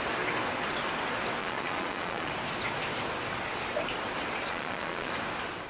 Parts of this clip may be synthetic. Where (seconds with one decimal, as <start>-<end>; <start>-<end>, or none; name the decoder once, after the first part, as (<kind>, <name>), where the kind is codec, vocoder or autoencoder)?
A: 1.4-2.3 (vocoder, Vocos); 4.5-5.1